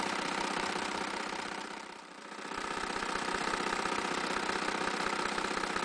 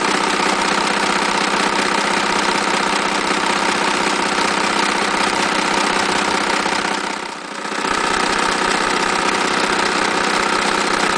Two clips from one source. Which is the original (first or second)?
second